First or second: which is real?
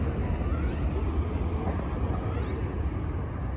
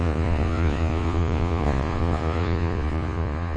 first